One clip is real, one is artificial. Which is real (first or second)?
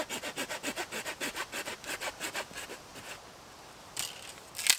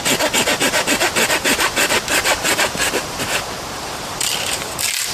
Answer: first